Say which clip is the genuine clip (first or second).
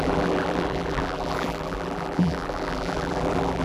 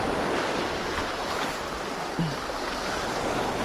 second